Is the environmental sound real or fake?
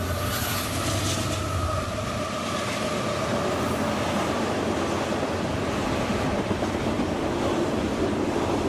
real